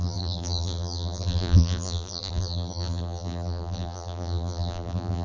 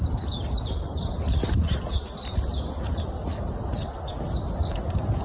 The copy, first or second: first